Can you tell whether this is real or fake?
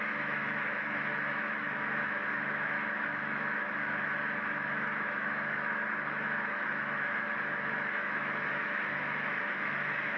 fake